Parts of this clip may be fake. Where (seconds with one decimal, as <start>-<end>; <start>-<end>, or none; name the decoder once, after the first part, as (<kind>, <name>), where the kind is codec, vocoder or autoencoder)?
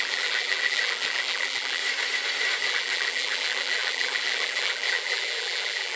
0.0-1.8 (vocoder, BigVGAN v2); 2.6-6.0